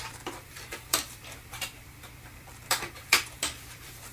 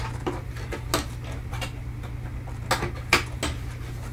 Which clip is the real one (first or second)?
second